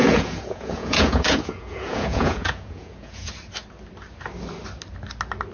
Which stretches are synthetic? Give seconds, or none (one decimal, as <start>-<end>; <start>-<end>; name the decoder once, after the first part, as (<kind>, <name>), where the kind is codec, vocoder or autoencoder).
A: 0.0-3.3 (vocoder, Vocos)